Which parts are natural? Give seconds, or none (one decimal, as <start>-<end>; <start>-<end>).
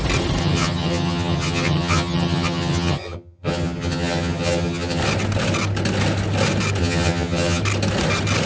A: 0.0-0.4; 5.0-6.8; 7.6-8.5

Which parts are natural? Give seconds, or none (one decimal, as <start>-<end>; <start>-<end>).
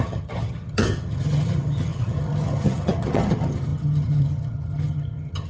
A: none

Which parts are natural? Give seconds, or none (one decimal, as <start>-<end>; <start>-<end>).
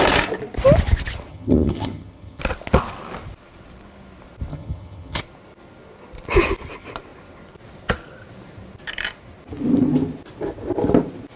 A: 0.0-1.3; 2.4-4.5; 5.2-11.4